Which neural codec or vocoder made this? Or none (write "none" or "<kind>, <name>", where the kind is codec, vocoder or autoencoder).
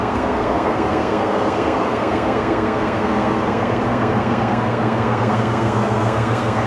codec, SNAC